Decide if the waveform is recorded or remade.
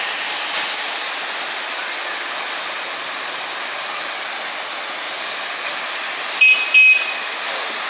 recorded